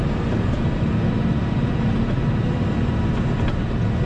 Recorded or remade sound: remade